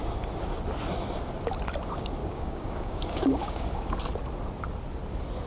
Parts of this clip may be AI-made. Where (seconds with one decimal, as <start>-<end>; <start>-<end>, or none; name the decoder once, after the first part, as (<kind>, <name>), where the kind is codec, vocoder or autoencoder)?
2.2-4.0 (codec, DAC)